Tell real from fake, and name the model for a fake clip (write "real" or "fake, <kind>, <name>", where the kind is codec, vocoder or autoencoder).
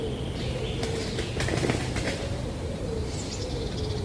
real